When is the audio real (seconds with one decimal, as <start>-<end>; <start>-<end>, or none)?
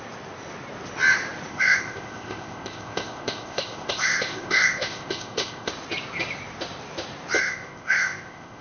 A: 0.0-1.5; 5.7-7.4